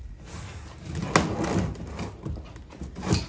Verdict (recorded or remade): recorded